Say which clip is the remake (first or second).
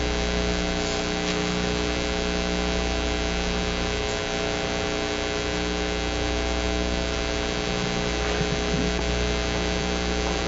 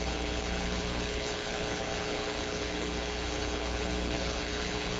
second